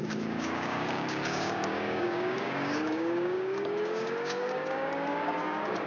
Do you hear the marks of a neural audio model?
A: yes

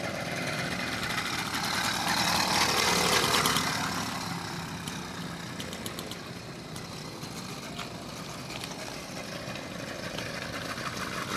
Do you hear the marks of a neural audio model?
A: no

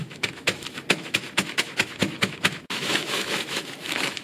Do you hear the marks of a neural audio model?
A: yes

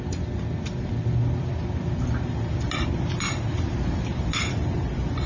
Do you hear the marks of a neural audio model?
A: no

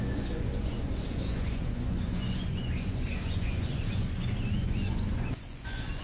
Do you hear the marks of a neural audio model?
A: yes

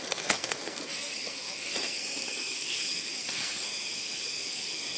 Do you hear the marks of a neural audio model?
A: yes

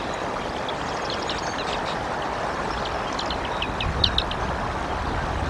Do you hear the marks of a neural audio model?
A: no